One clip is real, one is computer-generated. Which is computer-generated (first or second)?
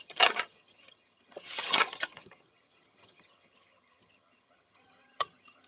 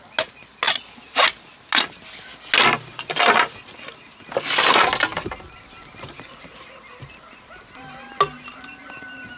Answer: first